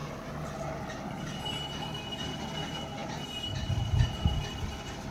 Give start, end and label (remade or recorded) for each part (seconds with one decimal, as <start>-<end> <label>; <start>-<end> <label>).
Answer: 0.0-5.1 recorded